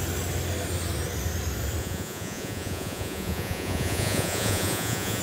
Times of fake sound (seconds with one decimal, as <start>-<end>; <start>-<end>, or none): 1.8-5.2

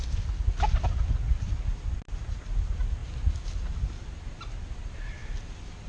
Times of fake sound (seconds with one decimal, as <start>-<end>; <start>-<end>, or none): none

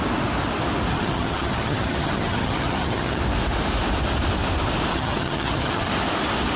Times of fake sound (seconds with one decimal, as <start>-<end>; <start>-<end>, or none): 0.9-3.2; 4.9-5.9

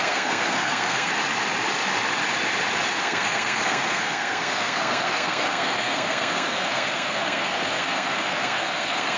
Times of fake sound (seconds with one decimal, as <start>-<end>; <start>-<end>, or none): 0.0-1.1; 3.0-9.2

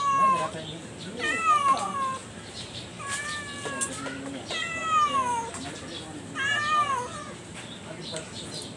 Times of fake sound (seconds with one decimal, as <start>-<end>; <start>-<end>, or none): 0.8-1.4; 2.2-2.9

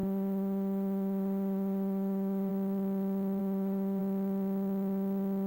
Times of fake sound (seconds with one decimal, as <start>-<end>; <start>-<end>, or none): 0.0-2.5; 3.4-4.0